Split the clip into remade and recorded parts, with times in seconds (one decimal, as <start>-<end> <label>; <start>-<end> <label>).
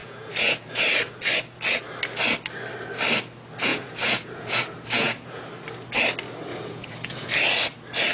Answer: 0.0-0.8 remade; 0.8-3.7 recorded; 3.7-5.4 remade; 5.4-6.5 recorded; 6.5-7.3 remade; 7.3-8.1 recorded